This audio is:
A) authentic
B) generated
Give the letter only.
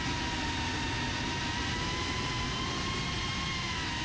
A